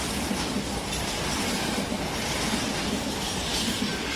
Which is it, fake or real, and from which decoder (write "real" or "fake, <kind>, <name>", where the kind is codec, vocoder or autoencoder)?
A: real